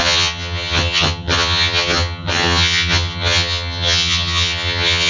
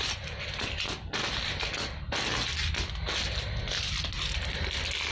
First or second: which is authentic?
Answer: second